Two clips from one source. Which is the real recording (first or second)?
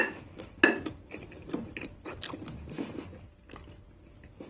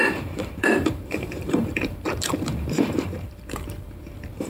first